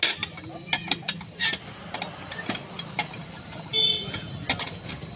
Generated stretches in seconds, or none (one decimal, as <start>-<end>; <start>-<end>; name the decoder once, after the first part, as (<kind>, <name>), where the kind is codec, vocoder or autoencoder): 3.7-4.3 (vocoder, Vocos)